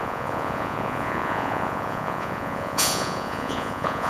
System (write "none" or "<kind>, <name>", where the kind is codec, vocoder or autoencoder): vocoder, Vocos